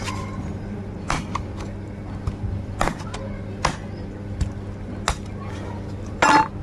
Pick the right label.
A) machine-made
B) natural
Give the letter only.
B